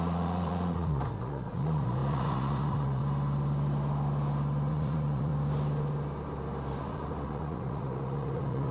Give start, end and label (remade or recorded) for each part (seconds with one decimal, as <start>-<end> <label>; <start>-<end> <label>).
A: 0.0-3.0 remade; 3.0-4.7 recorded; 4.7-5.3 remade; 5.3-6.8 recorded; 6.8-8.7 remade